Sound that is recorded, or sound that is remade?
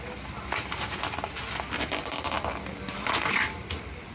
remade